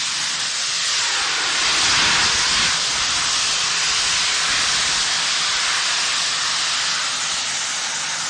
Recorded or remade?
recorded